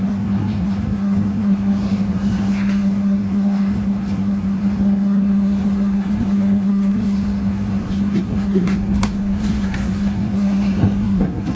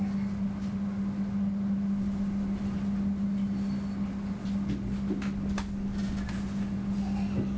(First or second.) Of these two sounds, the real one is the second